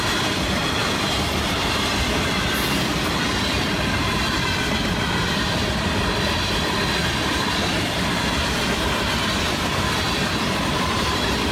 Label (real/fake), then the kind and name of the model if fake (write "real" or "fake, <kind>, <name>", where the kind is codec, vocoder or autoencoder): fake, vocoder, BigVGAN v2